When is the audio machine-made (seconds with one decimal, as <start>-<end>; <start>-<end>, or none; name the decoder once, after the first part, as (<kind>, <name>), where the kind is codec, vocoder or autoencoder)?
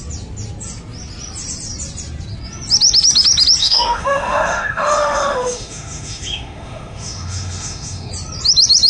3.6-8.1 (autoencoder, DAC-VAE)